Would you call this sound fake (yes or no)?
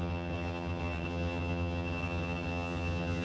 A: yes